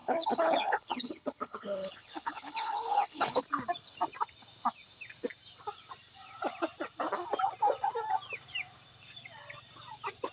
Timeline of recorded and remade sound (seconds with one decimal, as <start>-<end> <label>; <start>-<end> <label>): 0.0-3.4 remade; 3.4-10.3 recorded